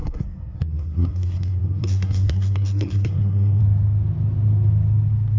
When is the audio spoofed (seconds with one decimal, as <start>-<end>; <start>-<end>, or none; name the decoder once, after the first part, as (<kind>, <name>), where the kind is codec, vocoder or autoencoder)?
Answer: 0.0-3.6 (codec, SNAC)